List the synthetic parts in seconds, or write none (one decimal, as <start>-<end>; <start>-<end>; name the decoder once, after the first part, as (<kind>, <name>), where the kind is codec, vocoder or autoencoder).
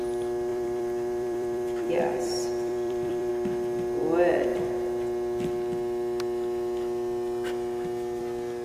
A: 0.5-3.3 (vocoder, BigVGAN v2)